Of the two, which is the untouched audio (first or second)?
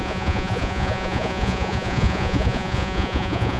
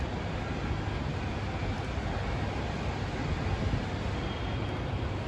second